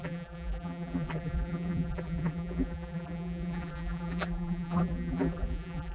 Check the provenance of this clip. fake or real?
fake